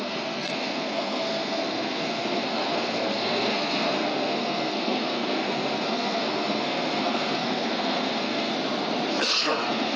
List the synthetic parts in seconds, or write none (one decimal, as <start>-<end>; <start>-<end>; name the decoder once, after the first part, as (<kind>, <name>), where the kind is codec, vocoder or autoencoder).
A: 0.0-8.5 (codec, SNAC); 9.1-10.0